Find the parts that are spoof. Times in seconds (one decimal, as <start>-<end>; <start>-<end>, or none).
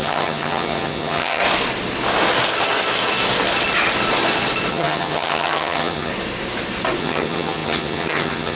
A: 0.0-1.4; 4.7-6.1; 7.0-8.6